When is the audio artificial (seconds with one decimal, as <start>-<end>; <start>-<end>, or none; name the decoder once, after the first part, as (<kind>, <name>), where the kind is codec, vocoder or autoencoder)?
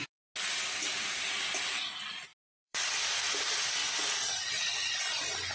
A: 2.3-3.2 (vocoder, BigVGAN v2)